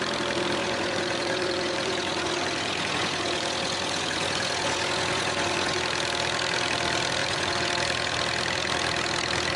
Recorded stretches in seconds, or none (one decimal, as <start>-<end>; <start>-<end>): 0.0-0.6; 5.8-7.2; 7.7-9.6